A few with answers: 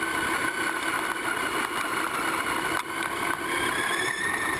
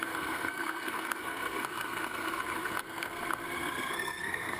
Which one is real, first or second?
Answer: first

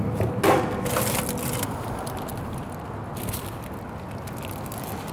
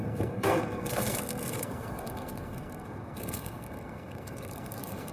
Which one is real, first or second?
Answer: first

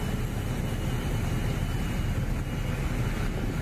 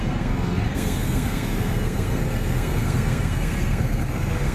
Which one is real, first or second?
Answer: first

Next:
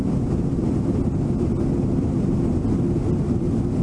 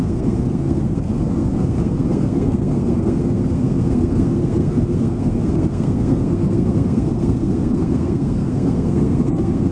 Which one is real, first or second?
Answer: first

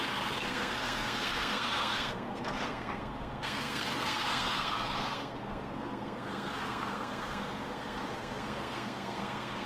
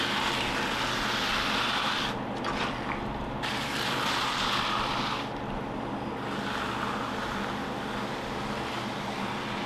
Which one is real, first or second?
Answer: second